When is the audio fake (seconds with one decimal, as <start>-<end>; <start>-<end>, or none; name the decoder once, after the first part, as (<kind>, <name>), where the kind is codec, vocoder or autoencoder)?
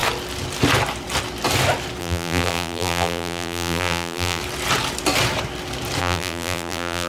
2.0-4.4 (vocoder, BigVGAN v2); 6.0-7.1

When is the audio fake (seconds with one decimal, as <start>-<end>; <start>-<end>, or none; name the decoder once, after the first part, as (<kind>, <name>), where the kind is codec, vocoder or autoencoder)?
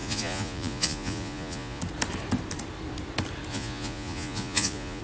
0.0-1.8 (vocoder, Vocos); 3.5-5.0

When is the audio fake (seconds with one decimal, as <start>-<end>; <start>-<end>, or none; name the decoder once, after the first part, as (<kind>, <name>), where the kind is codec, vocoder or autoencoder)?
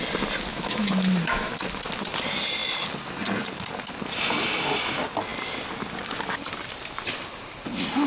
0.5-1.5 (autoencoder, DAC-VAE)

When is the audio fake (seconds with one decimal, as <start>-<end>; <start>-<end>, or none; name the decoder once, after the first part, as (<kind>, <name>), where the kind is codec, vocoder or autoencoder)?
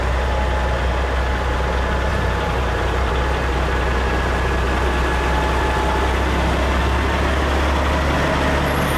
2.1-3.1 (vocoder, BigVGAN v2)